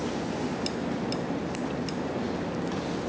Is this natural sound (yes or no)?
yes